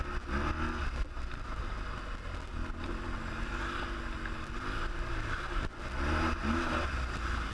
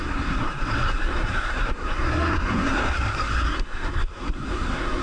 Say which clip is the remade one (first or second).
second